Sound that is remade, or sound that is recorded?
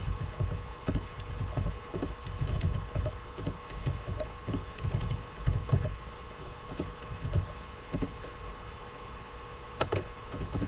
remade